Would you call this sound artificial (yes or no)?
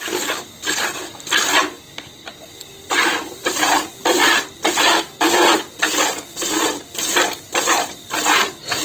no